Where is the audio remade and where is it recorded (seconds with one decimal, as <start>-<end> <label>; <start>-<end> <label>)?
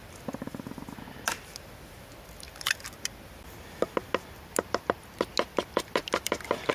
0.0-6.7 recorded